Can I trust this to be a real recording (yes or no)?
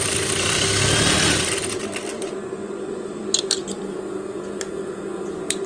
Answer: yes